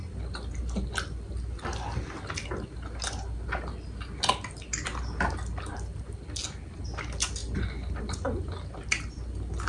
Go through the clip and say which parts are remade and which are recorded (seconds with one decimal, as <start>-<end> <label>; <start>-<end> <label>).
0.0-9.7 recorded